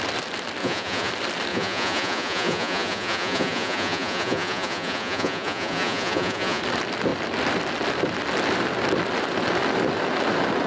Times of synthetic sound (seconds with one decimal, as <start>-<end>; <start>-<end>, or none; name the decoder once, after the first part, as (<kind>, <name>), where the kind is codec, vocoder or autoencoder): 0.6-1.1 (vocoder, Vocos); 1.5-6.6